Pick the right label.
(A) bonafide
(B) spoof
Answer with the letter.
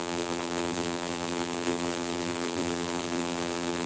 B